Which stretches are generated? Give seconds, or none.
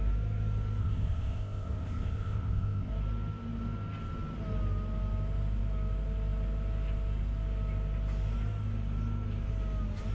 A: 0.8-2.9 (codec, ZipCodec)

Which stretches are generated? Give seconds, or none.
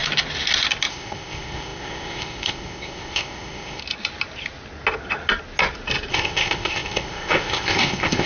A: 0.9-3.8 (codec, ZipCodec); 6.1-8.3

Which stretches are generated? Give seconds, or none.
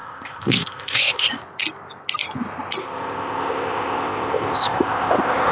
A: 0.0-1.3 (codec, ZipCodec); 2.8-5.5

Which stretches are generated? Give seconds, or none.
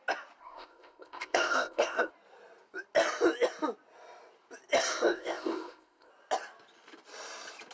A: 0.4-2.1 (codec, ZipCodec); 4.9-6.1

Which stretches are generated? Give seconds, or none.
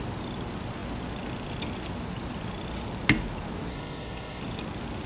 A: 3.7-4.4 (codec, ZipCodec)